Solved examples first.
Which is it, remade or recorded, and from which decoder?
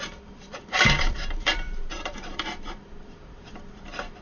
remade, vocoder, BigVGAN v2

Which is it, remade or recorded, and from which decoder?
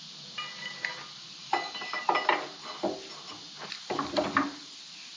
recorded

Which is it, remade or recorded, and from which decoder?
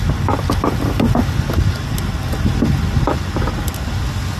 recorded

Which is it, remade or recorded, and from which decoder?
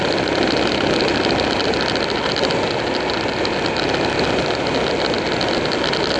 recorded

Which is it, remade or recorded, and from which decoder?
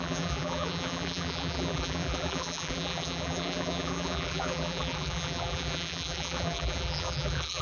remade, vocoder, BigVGAN v2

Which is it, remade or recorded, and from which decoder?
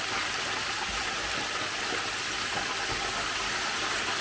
recorded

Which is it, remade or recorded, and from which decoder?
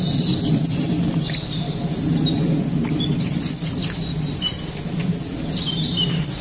recorded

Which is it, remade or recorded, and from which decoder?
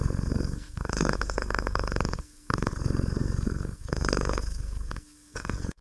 remade, codec, SNAC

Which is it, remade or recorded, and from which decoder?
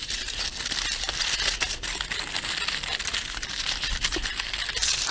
recorded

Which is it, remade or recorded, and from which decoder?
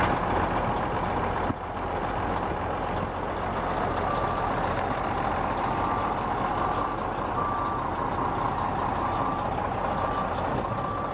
recorded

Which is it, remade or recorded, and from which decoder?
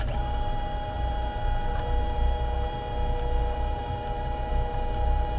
remade, vocoder, BigVGAN v2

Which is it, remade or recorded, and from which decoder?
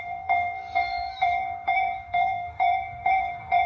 remade, codec, SNAC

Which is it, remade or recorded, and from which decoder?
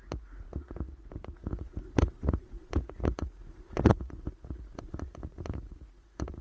remade, vocoder, Vocos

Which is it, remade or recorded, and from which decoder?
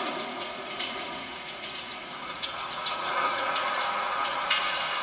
remade, vocoder, Vocos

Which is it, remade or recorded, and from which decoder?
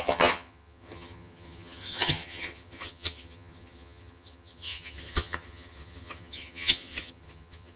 remade, vocoder, HiFi-GAN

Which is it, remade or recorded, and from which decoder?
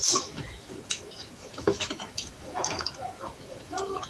remade, autoencoder, DAC-VAE